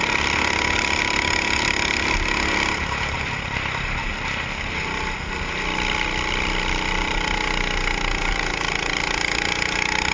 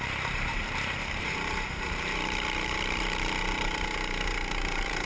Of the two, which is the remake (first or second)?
second